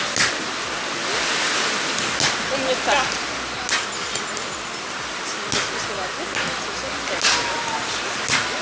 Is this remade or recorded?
recorded